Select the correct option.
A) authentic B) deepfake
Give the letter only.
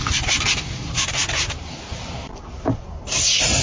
B